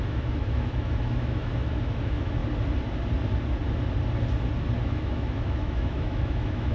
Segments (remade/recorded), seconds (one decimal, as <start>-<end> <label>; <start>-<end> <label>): 0.0-2.4 remade; 2.4-4.8 recorded; 4.8-6.7 remade